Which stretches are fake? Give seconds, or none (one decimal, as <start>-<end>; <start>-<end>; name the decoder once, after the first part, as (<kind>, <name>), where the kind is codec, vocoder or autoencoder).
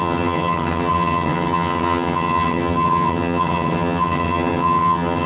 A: 0.0-5.3 (vocoder, HiFi-GAN)